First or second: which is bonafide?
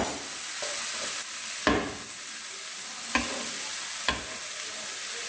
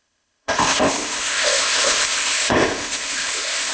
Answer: first